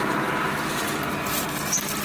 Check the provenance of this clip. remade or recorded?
recorded